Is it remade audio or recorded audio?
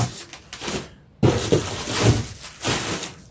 recorded